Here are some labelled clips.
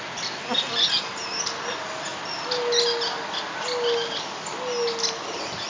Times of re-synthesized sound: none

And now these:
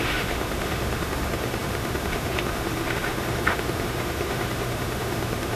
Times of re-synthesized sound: 0.0-5.6 (autoencoder, DAC-VAE)

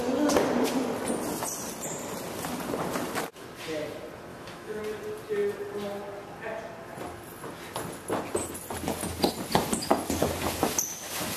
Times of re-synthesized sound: 4.3-4.8 (autoencoder, DAC-VAE)

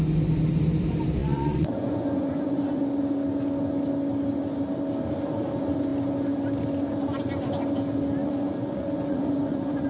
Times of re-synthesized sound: 1.2-2.8 (vocoder, Vocos); 8.2-9.9

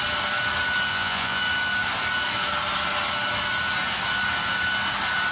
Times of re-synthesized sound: 0.9-1.4 (vocoder, Vocos)

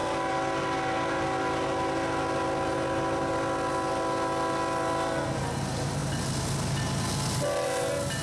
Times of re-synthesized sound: none